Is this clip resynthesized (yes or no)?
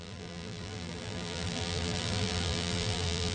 yes